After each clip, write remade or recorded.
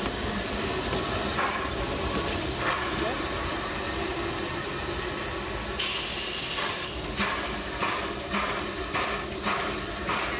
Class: recorded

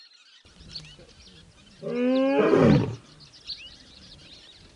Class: recorded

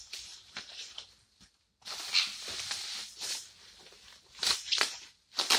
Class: recorded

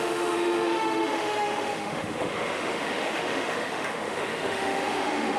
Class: remade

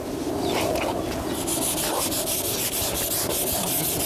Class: recorded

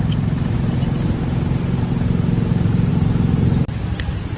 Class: recorded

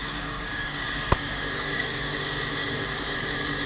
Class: remade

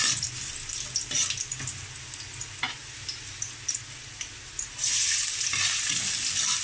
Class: recorded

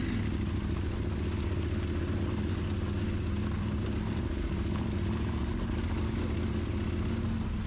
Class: recorded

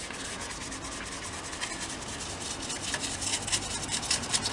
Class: recorded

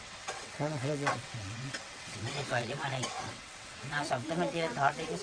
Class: remade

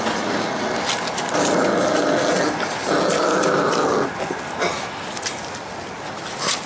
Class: recorded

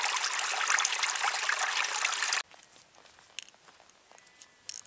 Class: recorded